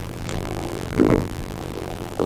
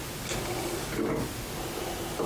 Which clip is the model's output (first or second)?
first